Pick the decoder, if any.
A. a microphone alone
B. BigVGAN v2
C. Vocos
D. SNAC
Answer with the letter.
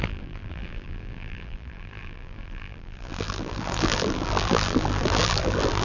B